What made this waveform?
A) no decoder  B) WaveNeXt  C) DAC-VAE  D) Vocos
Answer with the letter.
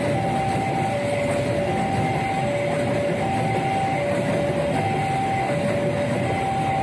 A